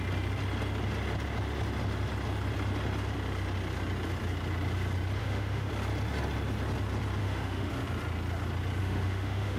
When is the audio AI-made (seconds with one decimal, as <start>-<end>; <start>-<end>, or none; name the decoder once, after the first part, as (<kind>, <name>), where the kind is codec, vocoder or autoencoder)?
5.2-5.7 (autoencoder, DAC-VAE); 7.2-7.7; 8.8-9.6